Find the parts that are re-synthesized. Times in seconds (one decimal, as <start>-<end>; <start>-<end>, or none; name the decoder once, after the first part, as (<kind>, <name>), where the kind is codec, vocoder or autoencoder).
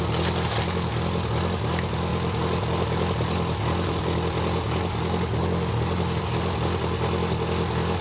none